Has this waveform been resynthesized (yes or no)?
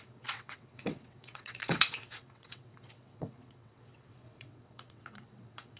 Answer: yes